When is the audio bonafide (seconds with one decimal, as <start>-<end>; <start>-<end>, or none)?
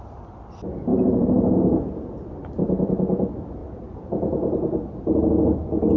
3.6-6.0